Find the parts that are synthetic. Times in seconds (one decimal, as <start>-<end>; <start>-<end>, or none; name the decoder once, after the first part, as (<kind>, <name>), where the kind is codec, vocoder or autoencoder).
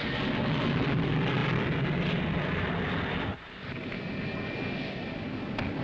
none